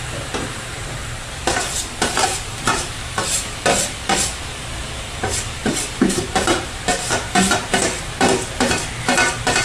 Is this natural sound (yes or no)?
no